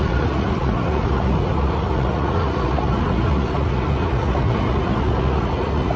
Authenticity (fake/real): fake